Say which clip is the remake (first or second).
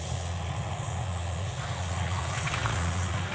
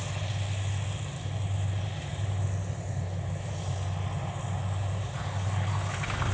first